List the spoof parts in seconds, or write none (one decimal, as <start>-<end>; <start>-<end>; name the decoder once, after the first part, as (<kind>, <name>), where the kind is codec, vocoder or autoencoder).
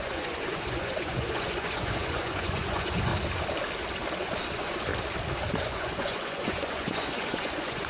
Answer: 0.0-3.1 (vocoder, Vocos); 4.4-4.9; 5.6-7.9